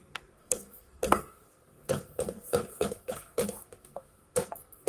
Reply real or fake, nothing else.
fake